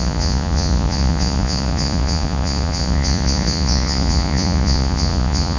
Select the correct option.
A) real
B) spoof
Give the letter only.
B